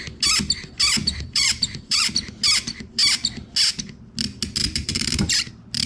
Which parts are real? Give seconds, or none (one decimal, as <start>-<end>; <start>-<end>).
0.0-1.0; 2.1-4.6; 5.5-5.9